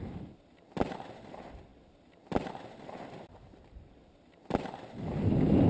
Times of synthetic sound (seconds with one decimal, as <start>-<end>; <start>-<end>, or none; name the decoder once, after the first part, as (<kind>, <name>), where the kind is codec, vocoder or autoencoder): none